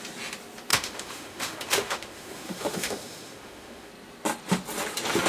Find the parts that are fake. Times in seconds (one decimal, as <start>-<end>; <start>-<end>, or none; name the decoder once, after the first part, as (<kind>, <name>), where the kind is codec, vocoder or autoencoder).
0.7-3.9 (autoencoder, DAC-VAE)